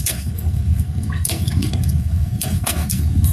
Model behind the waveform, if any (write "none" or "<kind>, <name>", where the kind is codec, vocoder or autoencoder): codec, SNAC